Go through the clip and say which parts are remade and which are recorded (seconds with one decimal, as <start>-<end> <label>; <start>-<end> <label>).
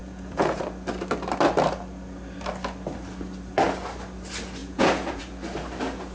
0.0-0.6 remade; 0.6-4.6 recorded; 4.6-5.2 remade; 5.2-6.1 recorded